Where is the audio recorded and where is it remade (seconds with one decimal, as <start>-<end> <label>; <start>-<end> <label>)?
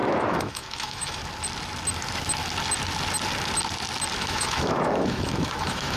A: 0.0-1.2 remade; 1.2-4.2 recorded; 4.2-6.0 remade